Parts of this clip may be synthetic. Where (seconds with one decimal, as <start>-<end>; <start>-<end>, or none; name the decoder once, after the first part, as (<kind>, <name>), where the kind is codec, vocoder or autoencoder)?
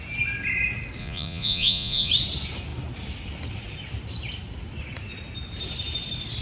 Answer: 1.0-2.1 (vocoder, Vocos)